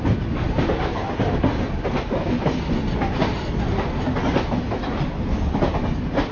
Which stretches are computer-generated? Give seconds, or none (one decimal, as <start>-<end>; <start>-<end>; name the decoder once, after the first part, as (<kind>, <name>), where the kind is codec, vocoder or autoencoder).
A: none